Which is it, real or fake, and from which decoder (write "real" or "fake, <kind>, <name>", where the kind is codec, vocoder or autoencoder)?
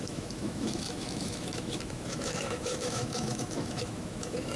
fake, autoencoder, DAC-VAE